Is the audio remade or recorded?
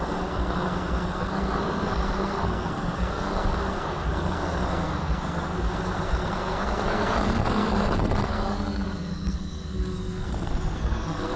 remade